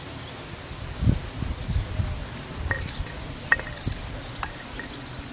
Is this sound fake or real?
real